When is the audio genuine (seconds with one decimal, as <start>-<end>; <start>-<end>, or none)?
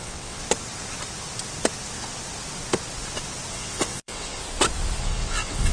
0.4-3.5; 4.4-5.0